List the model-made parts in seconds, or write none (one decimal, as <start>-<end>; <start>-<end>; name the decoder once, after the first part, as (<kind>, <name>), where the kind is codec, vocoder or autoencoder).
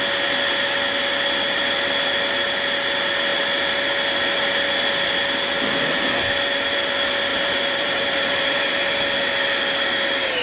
7.3-8.7 (vocoder, BigVGAN v2)